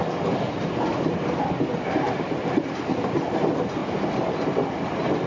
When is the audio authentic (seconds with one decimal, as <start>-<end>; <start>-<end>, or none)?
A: 0.0-5.3